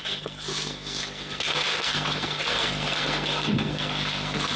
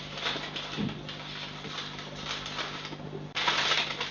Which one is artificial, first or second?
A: first